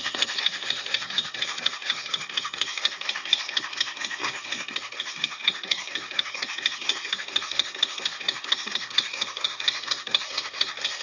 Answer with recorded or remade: remade